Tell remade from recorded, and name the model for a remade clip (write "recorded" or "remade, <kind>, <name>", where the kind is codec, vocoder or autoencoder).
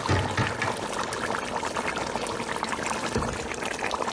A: recorded